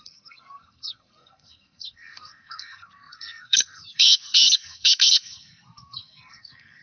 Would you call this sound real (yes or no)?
no